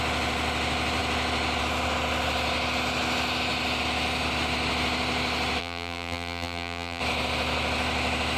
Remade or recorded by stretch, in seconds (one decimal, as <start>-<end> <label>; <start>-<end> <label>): 0.0-5.6 recorded; 5.6-7.0 remade; 7.0-8.4 recorded